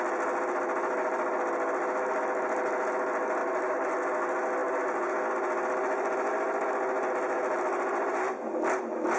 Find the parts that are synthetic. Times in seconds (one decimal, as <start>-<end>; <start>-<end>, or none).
none